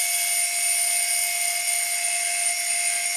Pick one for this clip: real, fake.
real